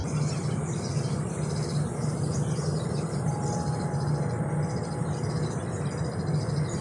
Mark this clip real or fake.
real